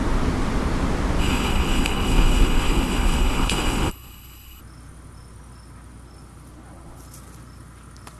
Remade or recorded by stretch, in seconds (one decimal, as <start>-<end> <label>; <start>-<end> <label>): 0.0-1.2 recorded; 1.2-4.6 remade; 4.6-8.2 recorded